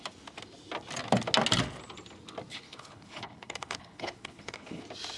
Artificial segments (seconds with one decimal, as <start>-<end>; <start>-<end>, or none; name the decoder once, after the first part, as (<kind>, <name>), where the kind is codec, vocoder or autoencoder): 2.5-4.8 (codec, HILCodec)

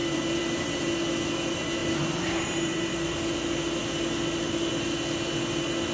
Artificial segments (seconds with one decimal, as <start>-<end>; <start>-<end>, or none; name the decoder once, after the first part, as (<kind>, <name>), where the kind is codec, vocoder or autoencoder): 0.0-0.9 (vocoder, BigVGAN v2); 1.8-2.9

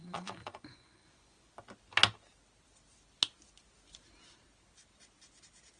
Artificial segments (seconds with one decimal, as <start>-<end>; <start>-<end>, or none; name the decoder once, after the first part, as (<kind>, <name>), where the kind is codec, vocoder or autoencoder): 0.0-1.5 (vocoder, Vocos)

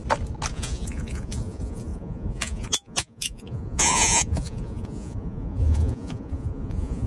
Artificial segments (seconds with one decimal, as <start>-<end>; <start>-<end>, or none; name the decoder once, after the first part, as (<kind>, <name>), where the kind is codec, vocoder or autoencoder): 0.5-7.1 (vocoder, Vocos)

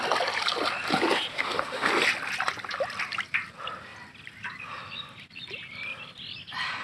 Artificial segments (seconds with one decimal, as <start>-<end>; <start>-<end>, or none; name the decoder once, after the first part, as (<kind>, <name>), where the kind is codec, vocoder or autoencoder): 1.3-1.9 (autoencoder, DAC-VAE)

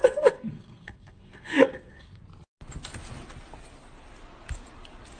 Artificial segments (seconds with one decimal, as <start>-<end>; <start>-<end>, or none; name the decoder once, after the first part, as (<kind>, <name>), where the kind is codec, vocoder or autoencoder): 0.0-2.2 (codec, SNAC)